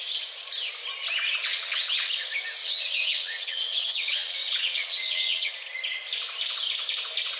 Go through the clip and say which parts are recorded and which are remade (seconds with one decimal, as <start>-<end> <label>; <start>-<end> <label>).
0.0-1.5 recorded; 1.5-2.1 remade; 2.1-2.6 recorded; 2.6-5.5 remade; 5.5-7.4 recorded